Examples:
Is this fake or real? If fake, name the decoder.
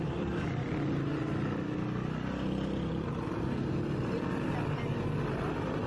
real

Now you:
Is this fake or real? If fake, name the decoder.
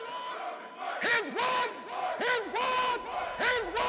fake, vocoder, BigVGAN v2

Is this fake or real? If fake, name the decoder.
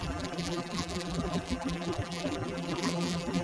fake, vocoder, BigVGAN v2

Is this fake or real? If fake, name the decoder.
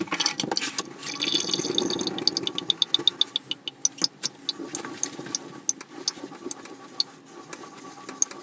real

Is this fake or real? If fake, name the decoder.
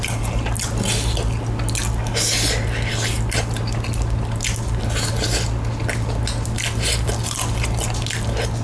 real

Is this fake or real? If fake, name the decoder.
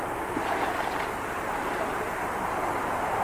fake, vocoder, BigVGAN v2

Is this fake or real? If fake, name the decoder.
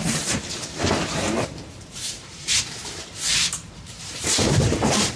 fake, vocoder, BigVGAN v2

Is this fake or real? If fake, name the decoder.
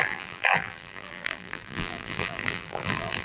fake, vocoder, BigVGAN v2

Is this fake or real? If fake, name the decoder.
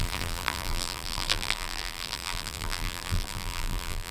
fake, vocoder, BigVGAN v2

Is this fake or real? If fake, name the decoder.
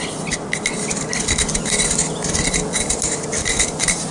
real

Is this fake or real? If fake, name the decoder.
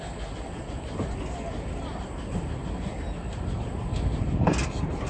real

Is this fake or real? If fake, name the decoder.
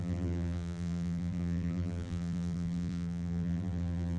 fake, vocoder, BigVGAN v2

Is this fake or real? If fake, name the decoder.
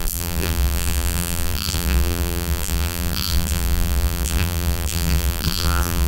fake, vocoder, BigVGAN v2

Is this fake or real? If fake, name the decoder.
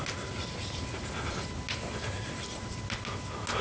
real